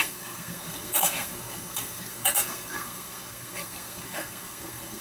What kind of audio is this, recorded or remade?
remade